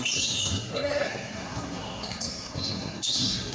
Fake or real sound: fake